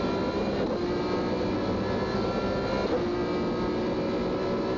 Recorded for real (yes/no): yes